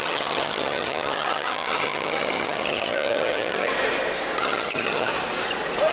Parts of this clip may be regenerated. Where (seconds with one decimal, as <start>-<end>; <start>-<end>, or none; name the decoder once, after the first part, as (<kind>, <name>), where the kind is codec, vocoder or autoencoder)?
0.0-3.7 (vocoder, HiFi-GAN); 4.4-5.1